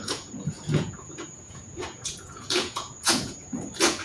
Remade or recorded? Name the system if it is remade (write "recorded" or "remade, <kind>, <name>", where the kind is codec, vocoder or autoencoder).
remade, vocoder, Vocos